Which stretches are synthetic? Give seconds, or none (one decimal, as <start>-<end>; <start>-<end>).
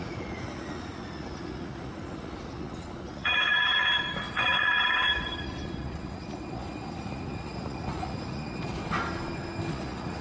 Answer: 0.0-8.8; 9.7-10.2